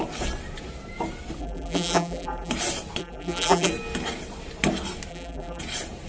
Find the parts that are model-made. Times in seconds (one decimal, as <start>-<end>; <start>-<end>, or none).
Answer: 1.4-2.5; 3.0-3.7; 5.1-5.6